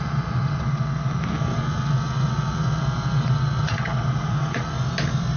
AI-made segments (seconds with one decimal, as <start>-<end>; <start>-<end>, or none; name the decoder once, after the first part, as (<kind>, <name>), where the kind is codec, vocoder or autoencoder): 0.4-1.1 (vocoder, WaveNeXt); 1.5-4.7